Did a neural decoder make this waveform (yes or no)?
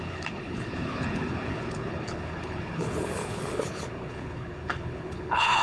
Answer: yes